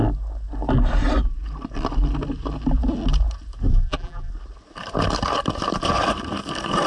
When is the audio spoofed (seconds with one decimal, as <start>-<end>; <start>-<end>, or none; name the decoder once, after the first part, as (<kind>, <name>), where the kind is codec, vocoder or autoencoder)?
3.7-4.3 (vocoder, BigVGAN v2)